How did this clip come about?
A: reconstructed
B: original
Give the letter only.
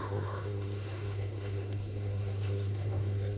A